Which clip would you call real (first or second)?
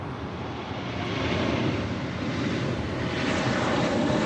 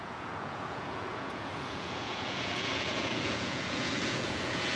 first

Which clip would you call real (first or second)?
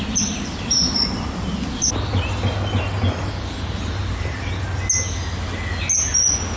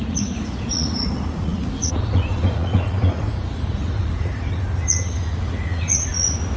first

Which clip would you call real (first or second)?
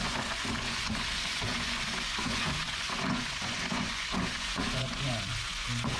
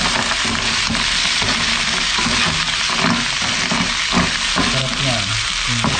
second